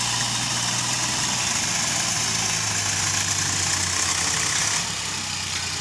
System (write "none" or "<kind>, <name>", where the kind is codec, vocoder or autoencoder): none